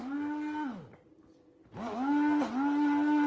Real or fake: real